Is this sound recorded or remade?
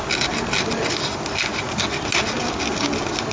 recorded